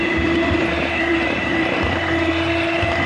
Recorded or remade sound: remade